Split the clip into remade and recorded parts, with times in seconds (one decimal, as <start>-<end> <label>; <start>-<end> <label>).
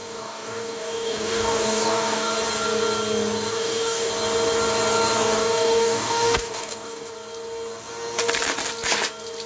0.0-2.3 remade; 2.3-3.5 recorded; 3.5-4.1 remade; 4.1-5.2 recorded; 5.2-7.1 remade; 7.1-9.5 recorded